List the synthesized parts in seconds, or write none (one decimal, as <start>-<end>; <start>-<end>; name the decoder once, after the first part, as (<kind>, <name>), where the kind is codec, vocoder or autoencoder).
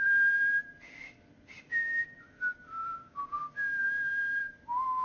2.8-3.4 (codec, DAC); 3.8-4.4